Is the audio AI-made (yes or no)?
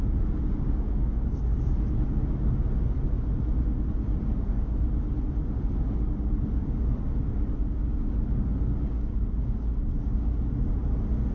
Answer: no